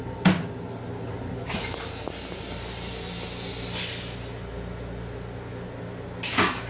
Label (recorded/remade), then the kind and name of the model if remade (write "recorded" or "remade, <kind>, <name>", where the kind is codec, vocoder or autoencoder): recorded